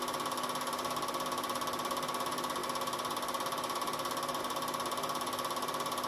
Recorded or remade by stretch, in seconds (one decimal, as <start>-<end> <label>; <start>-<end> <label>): 0.0-6.1 recorded